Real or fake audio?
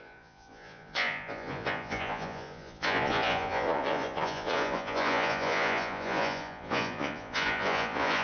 fake